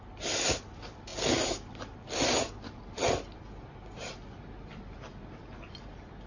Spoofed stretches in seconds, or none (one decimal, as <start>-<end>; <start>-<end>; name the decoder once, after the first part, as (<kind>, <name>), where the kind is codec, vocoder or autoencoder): none